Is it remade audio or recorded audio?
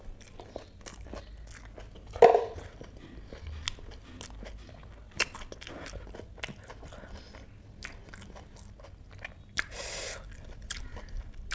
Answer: recorded